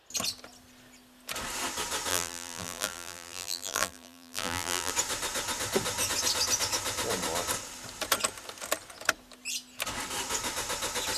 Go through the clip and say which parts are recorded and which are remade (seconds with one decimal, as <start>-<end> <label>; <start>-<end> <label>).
0.0-2.1 recorded; 2.1-4.9 remade; 4.9-11.2 recorded